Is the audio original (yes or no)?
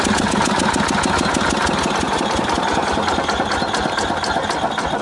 yes